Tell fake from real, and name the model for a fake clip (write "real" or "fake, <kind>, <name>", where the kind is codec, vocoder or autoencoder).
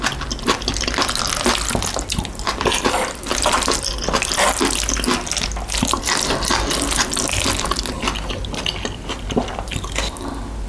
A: real